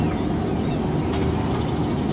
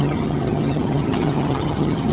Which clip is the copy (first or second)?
second